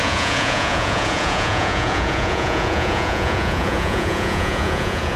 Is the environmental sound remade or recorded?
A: remade